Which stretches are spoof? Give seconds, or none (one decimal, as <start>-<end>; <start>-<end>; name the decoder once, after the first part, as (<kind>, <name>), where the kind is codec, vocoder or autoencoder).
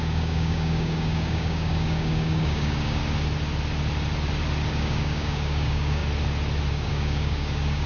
0.0-3.0 (codec, DAC); 4.7-6.0; 6.7-7.9